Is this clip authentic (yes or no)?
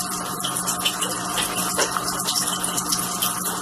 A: no